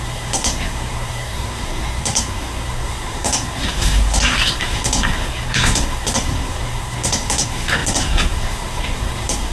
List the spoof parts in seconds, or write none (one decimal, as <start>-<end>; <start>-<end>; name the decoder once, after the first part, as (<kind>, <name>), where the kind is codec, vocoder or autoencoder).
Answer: 0.0-9.5 (codec, SNAC)